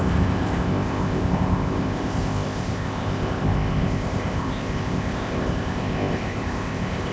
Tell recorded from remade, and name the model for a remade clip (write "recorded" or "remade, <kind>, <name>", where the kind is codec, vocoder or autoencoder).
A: remade, codec, ZipCodec